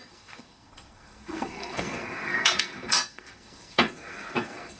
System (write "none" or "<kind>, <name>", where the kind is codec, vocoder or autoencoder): codec, SNAC